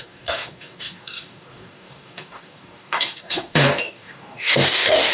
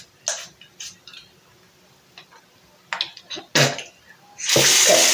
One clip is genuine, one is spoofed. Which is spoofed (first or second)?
first